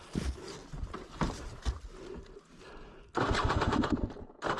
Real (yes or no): yes